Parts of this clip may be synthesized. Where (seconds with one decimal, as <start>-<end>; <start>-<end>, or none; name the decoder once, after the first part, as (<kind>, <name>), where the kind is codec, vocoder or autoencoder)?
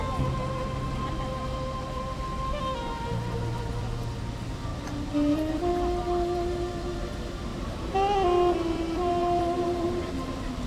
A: 4.7-5.7 (vocoder, BigVGAN v2); 7.5-10.1